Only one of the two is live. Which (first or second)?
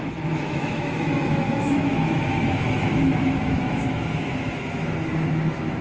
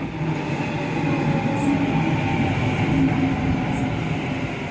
second